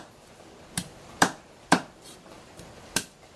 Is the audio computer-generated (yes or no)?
yes